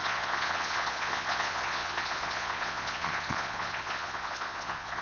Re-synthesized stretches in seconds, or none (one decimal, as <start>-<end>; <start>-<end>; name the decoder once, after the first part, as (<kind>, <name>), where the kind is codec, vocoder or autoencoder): 0.0-5.0 (vocoder, Vocos)